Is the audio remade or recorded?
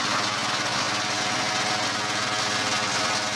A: recorded